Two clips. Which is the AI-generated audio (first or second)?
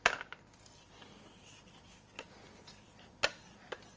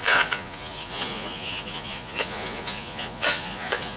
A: second